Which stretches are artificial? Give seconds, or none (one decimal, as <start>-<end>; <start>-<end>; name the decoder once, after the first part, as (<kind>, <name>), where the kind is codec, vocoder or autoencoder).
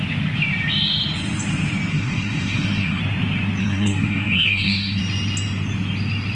1.9-3.0 (codec, SNAC); 3.6-5.0